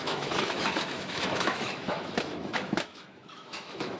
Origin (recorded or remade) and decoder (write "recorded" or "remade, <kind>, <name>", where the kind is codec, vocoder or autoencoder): remade, autoencoder, DAC-VAE